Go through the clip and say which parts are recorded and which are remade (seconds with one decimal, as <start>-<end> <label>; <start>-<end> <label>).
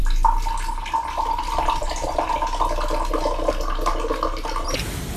0.0-5.2 recorded